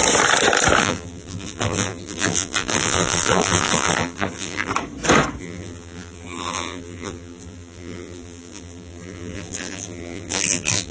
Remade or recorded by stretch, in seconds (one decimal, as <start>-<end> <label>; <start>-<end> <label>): 0.0-0.8 recorded; 0.8-4.7 remade; 4.7-5.4 recorded; 5.4-10.9 remade